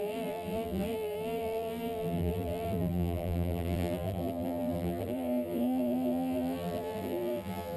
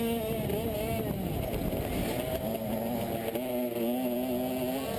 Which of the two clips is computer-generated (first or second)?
first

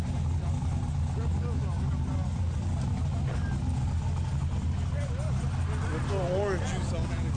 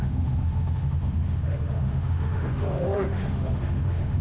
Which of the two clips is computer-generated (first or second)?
second